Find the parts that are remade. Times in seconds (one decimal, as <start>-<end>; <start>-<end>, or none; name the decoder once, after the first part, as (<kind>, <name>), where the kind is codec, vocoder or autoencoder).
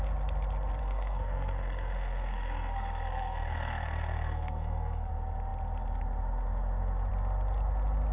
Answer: 0.8-5.1 (codec, SNAC)